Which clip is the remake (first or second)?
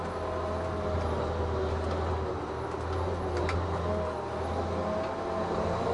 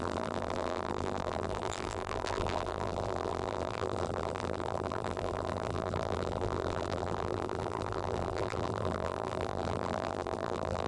second